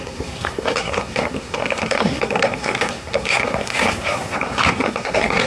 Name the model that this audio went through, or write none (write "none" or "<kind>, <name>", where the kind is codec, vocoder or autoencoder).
codec, SNAC